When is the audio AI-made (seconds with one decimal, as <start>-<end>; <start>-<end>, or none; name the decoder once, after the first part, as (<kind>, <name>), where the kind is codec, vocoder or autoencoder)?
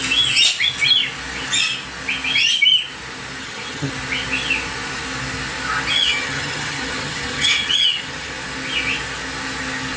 3.4-3.9 (vocoder, HiFi-GAN); 5.9-8.3